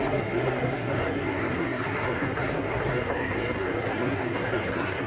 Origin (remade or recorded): remade